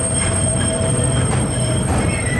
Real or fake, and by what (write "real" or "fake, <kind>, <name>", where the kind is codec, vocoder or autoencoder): fake, vocoder, BigVGAN v2